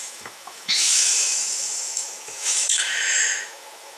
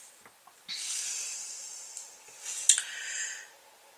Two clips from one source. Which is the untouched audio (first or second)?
second